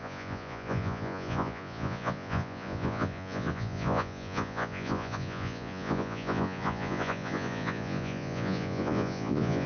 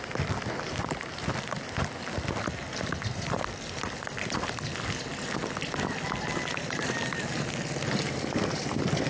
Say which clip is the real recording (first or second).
second